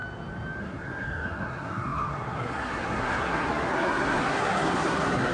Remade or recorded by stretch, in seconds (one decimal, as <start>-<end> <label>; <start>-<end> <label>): 0.0-0.6 recorded; 0.6-5.3 remade